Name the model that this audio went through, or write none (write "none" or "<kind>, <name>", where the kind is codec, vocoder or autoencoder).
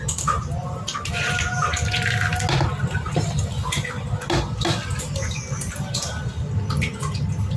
none